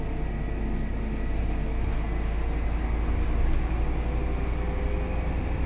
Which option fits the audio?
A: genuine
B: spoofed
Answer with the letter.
A